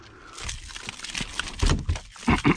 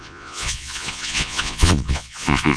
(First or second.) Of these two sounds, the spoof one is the second